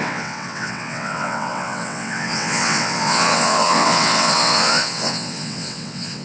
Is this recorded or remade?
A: remade